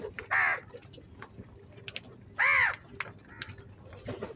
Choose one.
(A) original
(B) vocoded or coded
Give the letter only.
A